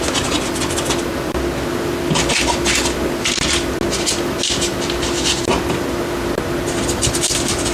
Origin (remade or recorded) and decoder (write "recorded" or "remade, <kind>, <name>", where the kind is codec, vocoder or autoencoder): recorded